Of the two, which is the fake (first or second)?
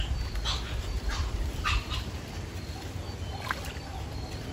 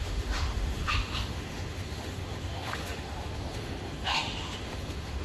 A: second